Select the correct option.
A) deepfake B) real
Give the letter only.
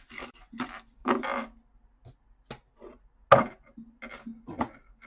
B